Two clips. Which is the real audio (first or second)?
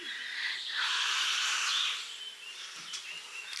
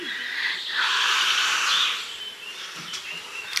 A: first